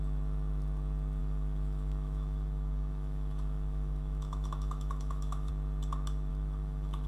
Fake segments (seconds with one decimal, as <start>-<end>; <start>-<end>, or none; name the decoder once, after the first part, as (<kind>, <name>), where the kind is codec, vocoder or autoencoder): 1.2-5.5 (autoencoder, DAC-VAE); 6.3-7.1